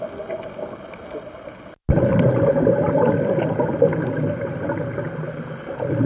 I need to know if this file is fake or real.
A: real